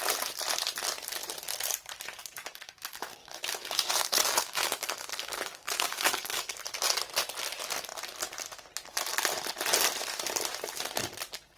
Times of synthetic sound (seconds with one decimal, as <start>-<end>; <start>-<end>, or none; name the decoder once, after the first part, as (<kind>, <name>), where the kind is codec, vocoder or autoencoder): 2.2-6.4 (codec, DAC)